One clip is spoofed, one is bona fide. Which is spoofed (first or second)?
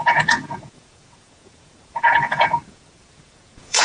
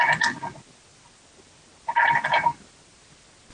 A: first